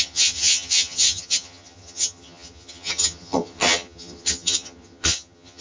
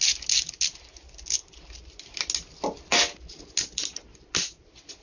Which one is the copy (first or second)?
first